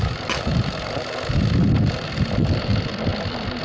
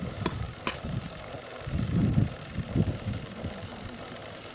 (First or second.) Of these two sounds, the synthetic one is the second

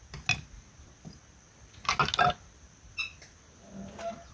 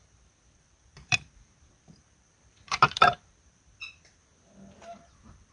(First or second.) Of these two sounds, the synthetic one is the second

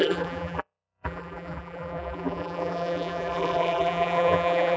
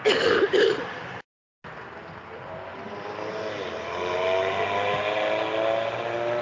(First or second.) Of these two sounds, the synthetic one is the first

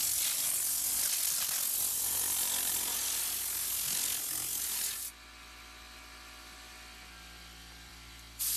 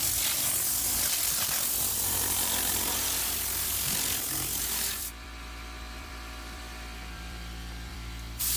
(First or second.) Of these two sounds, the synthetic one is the second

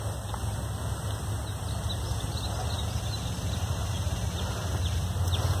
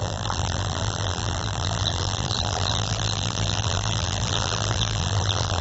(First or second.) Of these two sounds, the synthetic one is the second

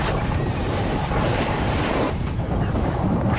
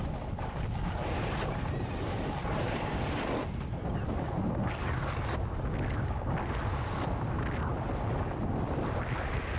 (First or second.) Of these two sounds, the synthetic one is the first